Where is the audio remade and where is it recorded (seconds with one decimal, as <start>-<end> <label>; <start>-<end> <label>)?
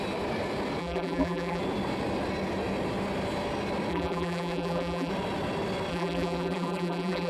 0.0-0.8 recorded; 0.8-1.6 remade; 1.6-3.9 recorded; 3.9-5.1 remade; 5.1-5.9 recorded; 5.9-7.3 remade